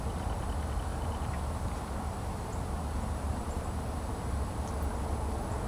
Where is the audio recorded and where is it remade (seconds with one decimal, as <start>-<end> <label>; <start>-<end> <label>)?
0.0-0.9 recorded; 0.9-4.3 remade; 4.3-5.7 recorded